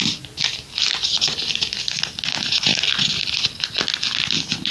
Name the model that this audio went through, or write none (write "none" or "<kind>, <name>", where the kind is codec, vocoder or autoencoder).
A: none